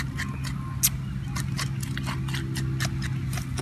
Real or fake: real